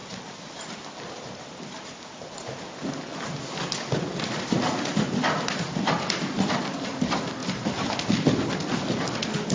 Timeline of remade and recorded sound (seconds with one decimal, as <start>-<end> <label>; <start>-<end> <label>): 0.0-0.9 remade; 0.9-7.4 recorded; 7.4-8.1 remade; 8.1-9.5 recorded